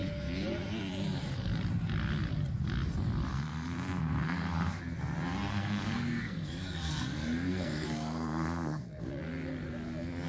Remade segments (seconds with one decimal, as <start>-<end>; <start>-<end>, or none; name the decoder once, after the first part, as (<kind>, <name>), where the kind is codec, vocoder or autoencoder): 3.3-4.8 (codec, SNAC); 5.5-9.1